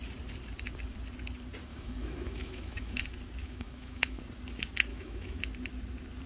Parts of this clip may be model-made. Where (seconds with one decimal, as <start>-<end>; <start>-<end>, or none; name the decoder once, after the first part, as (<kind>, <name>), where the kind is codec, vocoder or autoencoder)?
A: 1.7-3.0 (autoencoder, DAC-VAE); 3.4-4.2; 4.9-5.4